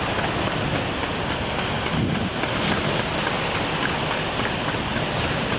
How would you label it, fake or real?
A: real